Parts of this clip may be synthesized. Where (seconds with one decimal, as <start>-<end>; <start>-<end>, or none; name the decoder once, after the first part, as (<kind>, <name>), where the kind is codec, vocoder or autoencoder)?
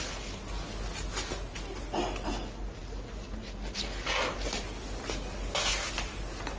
none